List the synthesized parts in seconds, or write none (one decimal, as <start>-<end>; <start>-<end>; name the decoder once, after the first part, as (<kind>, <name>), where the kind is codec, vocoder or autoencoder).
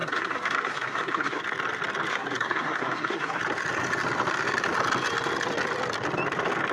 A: 0.0-1.4 (codec, SNAC); 2.1-3.4